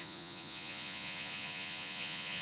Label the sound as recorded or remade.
remade